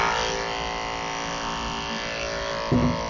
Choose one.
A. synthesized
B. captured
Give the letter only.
B